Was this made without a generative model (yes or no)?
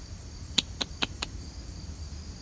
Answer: yes